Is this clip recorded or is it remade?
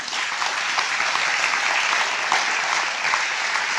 recorded